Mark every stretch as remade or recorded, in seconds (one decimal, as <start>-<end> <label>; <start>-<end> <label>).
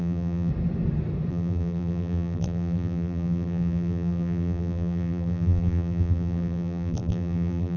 0.0-0.5 remade; 0.5-1.3 recorded; 1.3-7.8 remade